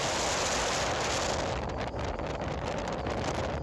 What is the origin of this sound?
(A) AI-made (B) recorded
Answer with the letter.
B